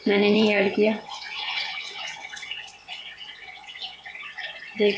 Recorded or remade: remade